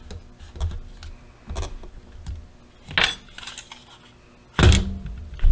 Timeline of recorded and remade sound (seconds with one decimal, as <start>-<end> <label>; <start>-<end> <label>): 0.0-5.5 recorded